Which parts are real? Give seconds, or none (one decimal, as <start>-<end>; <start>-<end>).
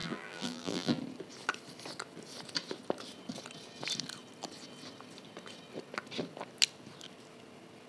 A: 1.0-7.9